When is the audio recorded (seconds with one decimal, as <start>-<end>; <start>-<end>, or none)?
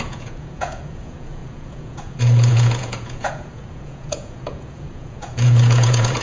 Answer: none